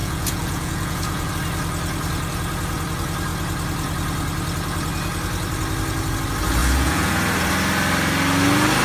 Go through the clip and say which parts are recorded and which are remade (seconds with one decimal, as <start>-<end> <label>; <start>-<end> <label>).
0.0-1.3 remade; 1.3-6.6 recorded; 6.6-7.1 remade; 7.1-8.8 recorded